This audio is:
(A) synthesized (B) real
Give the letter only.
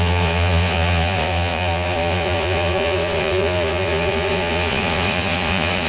A